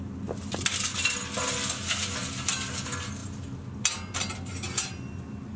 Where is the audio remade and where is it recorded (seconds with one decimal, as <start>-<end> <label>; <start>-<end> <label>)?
0.0-5.6 recorded